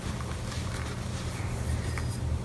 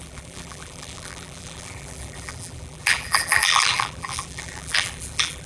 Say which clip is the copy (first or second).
second